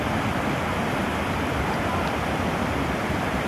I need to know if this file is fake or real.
fake